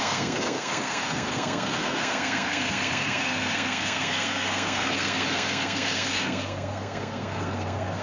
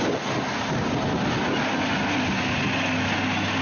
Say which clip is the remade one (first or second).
first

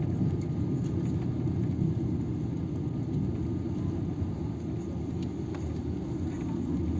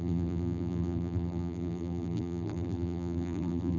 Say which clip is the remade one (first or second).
second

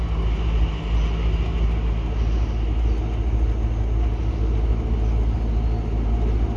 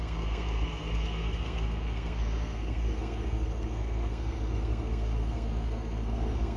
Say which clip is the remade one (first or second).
second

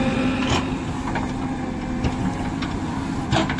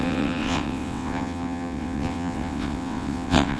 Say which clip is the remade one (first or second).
second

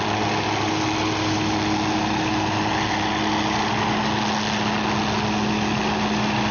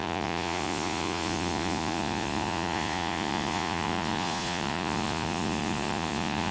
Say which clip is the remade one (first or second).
second